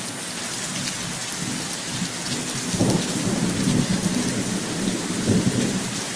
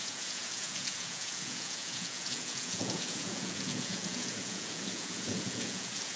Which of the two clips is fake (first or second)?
second